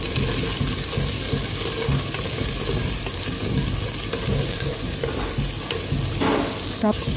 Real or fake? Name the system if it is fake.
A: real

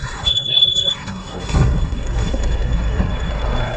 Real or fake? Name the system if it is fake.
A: fake, codec, SNAC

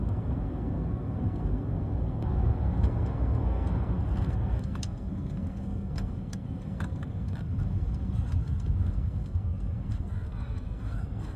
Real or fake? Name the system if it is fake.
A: fake, codec, SNAC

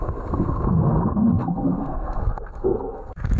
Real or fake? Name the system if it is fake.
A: fake, codec, SNAC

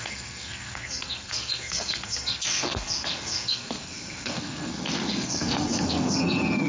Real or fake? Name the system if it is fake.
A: fake, codec, SNAC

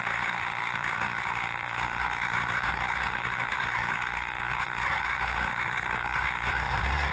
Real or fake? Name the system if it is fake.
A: fake, codec, SNAC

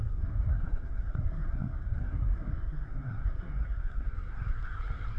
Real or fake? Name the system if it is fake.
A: fake, codec, SNAC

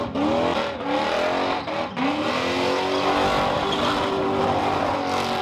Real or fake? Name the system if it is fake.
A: real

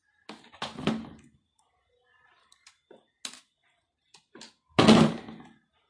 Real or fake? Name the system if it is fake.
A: real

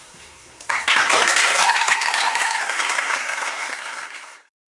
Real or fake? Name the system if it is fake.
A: fake, codec, SNAC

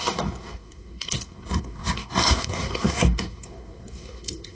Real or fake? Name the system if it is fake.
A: fake, codec, SNAC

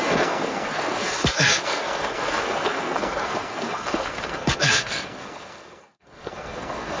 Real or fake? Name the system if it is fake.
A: fake, codec, SNAC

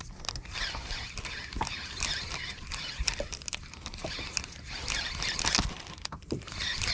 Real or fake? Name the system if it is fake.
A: real